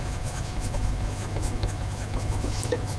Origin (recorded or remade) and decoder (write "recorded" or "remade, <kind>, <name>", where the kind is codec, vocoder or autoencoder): remade, autoencoder, DAC-VAE